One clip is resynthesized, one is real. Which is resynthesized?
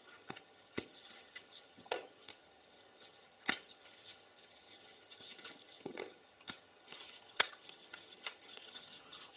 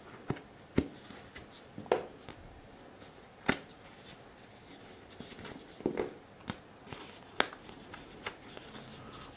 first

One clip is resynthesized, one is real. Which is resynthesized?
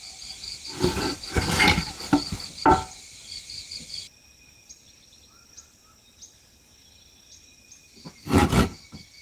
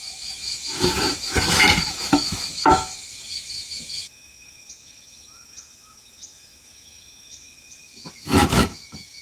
second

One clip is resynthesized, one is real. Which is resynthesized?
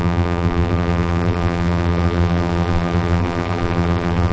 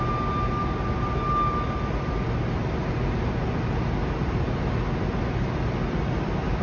first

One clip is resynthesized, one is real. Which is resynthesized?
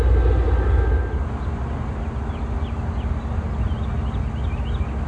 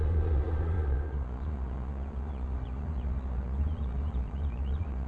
second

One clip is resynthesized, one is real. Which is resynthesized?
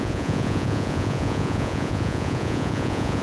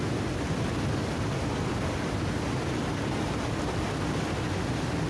first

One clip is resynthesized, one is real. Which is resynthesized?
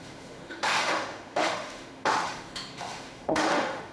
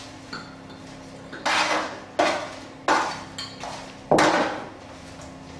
first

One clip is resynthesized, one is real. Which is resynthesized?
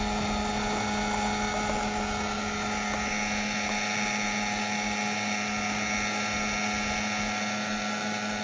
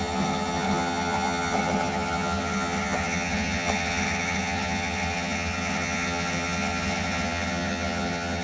second